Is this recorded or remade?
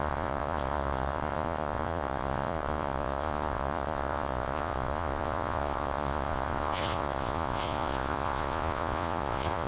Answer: remade